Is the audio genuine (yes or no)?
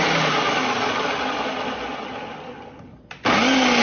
yes